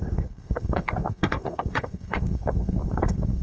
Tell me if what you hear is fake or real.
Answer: fake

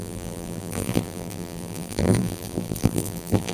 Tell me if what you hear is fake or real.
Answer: fake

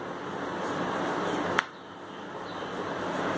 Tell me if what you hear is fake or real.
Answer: real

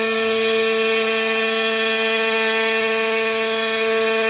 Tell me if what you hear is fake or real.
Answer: real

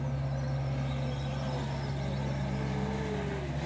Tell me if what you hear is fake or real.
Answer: real